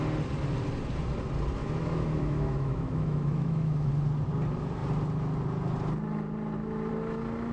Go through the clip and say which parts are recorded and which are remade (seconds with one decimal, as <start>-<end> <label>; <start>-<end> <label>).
0.0-1.6 recorded; 1.6-3.9 remade; 3.9-7.5 recorded

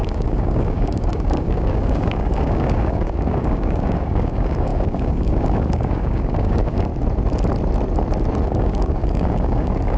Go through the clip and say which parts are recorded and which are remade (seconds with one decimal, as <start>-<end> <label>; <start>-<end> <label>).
0.0-6.9 remade; 6.9-8.4 recorded; 8.4-10.0 remade